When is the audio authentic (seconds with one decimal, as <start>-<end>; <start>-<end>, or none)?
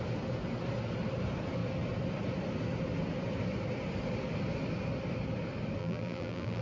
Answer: 0.0-5.8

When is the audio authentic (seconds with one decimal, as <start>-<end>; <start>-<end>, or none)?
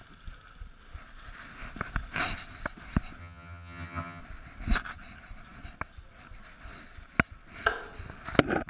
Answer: 0.0-3.2; 4.2-8.7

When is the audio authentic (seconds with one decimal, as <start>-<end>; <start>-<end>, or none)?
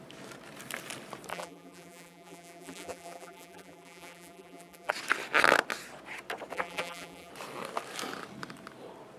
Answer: 0.0-1.3; 4.9-6.5; 7.3-9.2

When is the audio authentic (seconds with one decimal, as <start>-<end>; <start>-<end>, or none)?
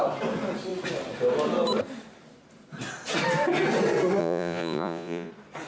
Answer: 0.0-4.2; 5.3-5.7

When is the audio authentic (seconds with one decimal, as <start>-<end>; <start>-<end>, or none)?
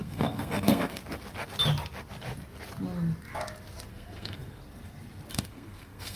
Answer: 1.0-3.9; 4.6-5.3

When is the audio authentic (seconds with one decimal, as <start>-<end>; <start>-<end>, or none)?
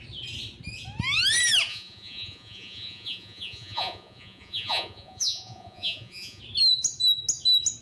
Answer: 0.0-1.7; 6.4-7.8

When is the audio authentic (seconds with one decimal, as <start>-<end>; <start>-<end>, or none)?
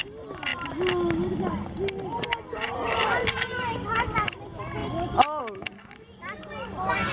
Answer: 0.0-7.1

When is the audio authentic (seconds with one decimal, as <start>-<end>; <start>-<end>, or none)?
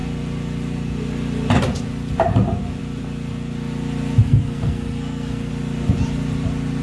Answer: 0.0-4.2; 5.5-6.8